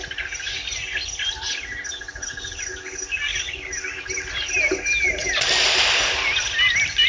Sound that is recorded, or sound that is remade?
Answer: recorded